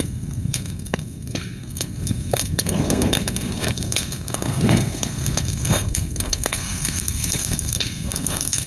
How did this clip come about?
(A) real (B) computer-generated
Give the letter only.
B